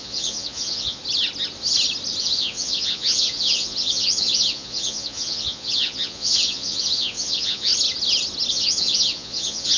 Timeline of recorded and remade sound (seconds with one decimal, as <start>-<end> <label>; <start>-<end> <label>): 0.0-1.0 remade; 1.0-2.2 recorded; 2.2-7.7 remade; 7.7-8.5 recorded; 8.5-9.8 remade